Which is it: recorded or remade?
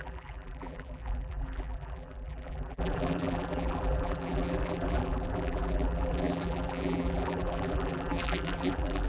remade